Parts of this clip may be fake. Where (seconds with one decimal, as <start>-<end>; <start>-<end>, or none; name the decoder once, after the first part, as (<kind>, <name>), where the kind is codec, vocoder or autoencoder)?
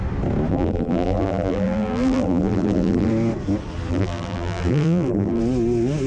0.5-3.1 (vocoder, BigVGAN v2); 3.9-5.4